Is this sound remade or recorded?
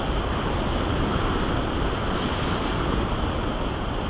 recorded